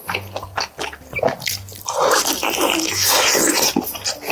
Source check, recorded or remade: recorded